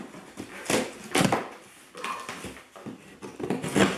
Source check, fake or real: real